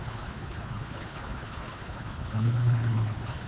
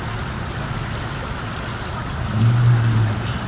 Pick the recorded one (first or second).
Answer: second